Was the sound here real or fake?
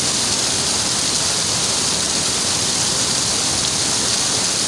real